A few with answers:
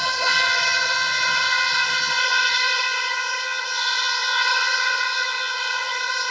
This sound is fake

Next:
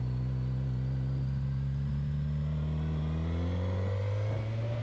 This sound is real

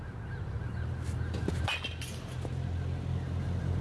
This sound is real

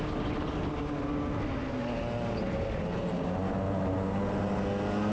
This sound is real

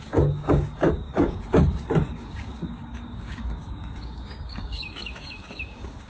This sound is fake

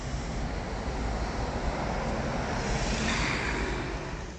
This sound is real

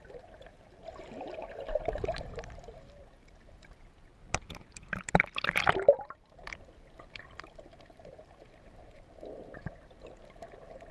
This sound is real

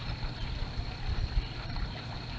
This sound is real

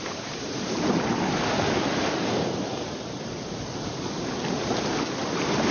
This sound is fake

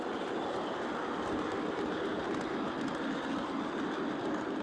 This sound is real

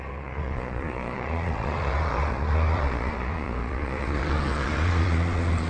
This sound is fake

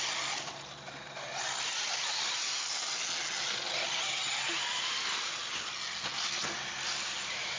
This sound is real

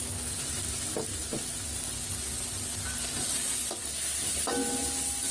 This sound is real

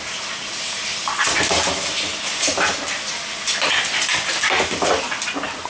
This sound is real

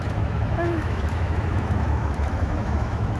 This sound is fake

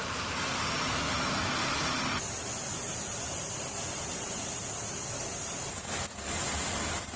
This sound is real